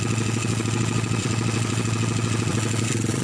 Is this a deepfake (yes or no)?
yes